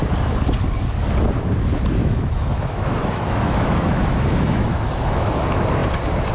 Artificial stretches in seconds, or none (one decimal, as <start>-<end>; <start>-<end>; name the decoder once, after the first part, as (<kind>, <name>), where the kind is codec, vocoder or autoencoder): 2.0-5.3 (autoencoder, DAC-VAE)